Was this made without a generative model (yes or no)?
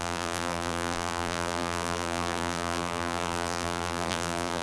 no